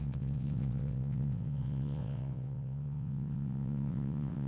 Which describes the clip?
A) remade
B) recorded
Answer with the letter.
A